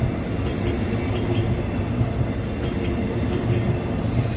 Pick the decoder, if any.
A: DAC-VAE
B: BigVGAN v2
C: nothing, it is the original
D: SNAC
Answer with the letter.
C